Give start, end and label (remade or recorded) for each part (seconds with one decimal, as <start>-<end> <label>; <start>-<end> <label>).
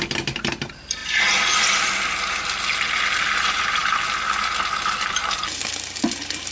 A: 0.0-6.5 recorded